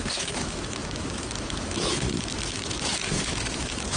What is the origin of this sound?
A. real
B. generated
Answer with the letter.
B